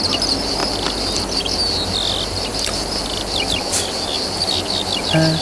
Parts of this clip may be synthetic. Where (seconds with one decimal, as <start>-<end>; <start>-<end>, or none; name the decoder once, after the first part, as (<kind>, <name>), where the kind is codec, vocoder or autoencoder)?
none